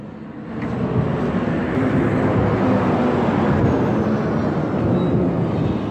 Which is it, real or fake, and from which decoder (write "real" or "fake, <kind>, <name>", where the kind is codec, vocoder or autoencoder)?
real